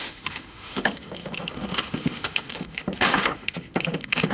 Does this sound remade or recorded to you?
remade